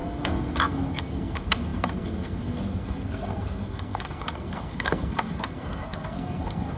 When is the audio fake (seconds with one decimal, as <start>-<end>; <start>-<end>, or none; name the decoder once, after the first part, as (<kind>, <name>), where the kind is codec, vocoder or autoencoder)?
0.0-6.8 (codec, SNAC)